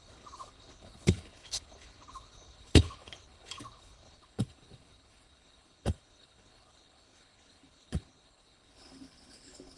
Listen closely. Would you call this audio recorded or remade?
remade